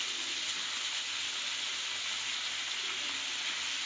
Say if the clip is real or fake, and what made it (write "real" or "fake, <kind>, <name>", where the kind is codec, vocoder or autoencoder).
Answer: real